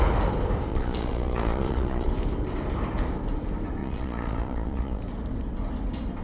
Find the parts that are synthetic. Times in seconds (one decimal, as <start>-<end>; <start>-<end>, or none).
0.7-2.1; 3.8-5.0